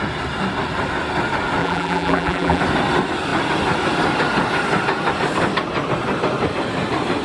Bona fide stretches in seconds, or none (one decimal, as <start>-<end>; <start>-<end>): 0.0-1.6; 2.6-7.2